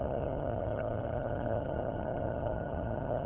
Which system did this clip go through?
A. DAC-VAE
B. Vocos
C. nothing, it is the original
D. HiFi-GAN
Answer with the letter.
D